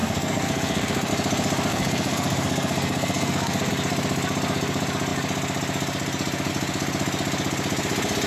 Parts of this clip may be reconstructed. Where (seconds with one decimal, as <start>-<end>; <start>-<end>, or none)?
0.0-1.1; 1.7-3.7